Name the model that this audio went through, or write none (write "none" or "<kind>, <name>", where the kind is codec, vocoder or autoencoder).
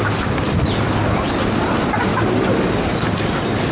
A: none